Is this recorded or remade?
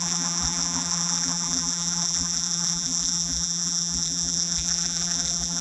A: remade